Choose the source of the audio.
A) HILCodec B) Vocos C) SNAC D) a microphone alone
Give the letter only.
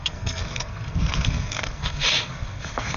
C